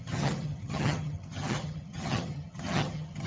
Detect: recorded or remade remade